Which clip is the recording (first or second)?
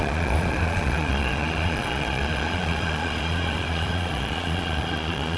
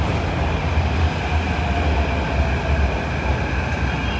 second